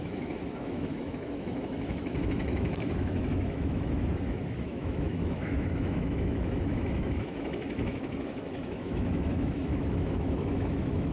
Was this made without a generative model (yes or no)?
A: no